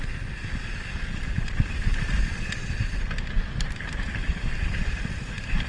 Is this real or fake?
real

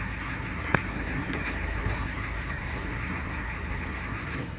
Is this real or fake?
fake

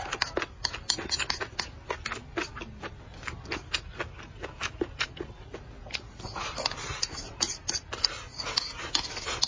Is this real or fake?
real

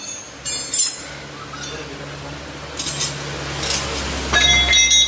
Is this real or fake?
real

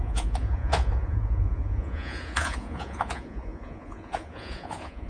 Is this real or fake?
fake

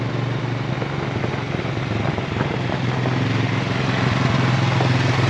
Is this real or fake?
real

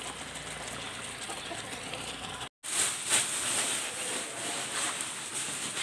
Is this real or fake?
real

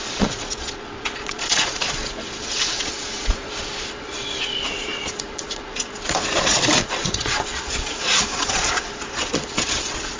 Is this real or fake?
fake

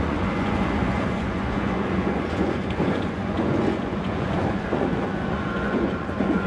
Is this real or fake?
fake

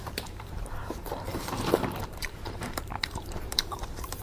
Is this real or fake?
fake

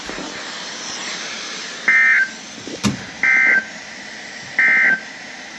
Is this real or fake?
real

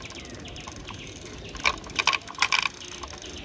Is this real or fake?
real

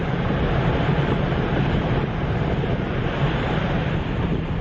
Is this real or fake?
real